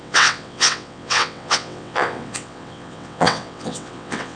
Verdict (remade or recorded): remade